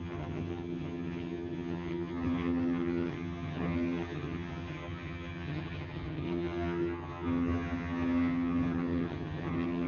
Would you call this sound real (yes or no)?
no